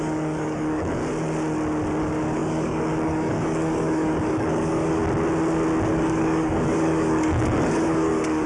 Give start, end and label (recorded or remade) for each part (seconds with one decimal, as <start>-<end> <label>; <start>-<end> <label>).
0.0-1.0 remade; 1.0-2.0 recorded; 2.0-5.0 remade; 5.0-5.9 recorded; 5.9-8.5 remade